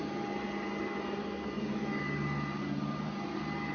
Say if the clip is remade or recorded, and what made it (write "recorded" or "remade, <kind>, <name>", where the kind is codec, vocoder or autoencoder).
recorded